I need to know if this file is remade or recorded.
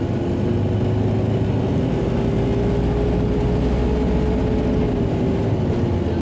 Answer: recorded